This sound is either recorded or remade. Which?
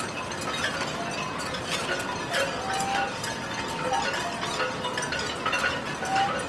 recorded